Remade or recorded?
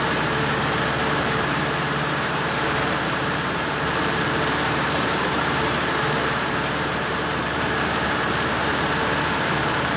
remade